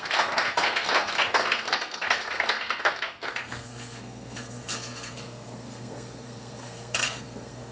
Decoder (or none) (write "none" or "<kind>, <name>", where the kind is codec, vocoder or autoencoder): codec, SNAC